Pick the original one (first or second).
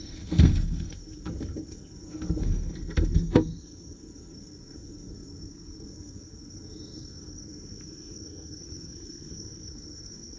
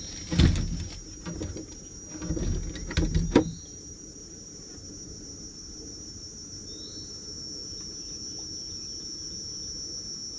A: second